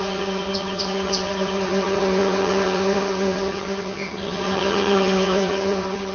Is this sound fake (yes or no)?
yes